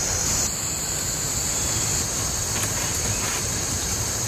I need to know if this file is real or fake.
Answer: real